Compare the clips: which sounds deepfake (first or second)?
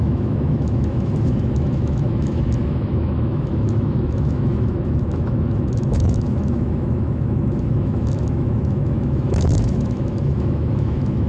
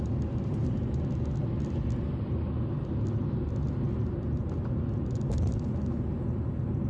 first